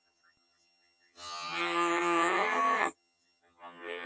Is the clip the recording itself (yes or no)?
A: no